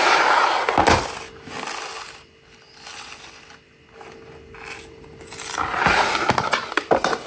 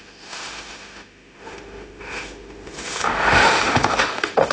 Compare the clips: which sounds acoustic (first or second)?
first